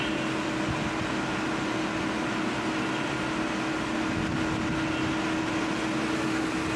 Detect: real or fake real